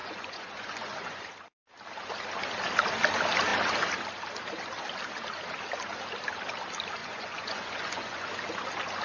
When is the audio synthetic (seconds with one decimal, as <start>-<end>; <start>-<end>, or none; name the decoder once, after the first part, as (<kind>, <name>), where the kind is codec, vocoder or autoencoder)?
0.0-1.3 (vocoder, Vocos); 7.0-8.3